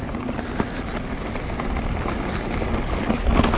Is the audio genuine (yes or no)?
yes